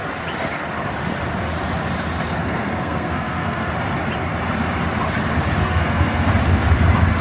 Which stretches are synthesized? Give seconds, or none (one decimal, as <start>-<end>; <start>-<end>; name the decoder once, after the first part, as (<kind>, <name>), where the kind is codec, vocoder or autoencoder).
2.4-3.7 (codec, SNAC); 5.6-6.3